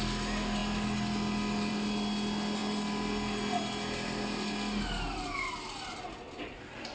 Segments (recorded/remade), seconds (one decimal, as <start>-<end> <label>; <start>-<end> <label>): 0.0-6.9 recorded

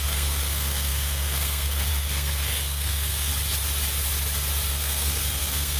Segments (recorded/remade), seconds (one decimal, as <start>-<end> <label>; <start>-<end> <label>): 0.0-3.3 remade; 3.3-4.7 recorded; 4.7-5.8 remade

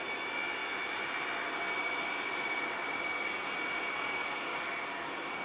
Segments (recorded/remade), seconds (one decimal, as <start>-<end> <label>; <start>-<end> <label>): 0.0-5.4 recorded

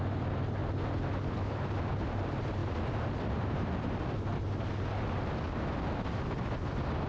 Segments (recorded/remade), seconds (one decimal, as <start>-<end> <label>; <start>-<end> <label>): 0.0-0.6 remade; 0.6-1.5 recorded; 1.5-2.6 remade; 2.6-3.3 recorded; 3.3-4.3 remade; 4.3-7.1 recorded